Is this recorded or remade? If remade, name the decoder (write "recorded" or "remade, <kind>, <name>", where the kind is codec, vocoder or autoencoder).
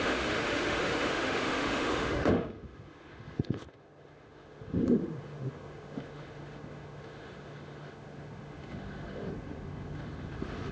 remade, autoencoder, DAC-VAE